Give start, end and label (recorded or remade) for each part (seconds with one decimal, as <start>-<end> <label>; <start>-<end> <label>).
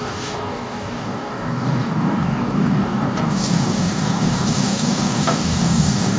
0.0-6.2 remade